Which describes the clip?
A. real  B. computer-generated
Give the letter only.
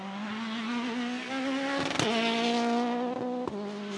A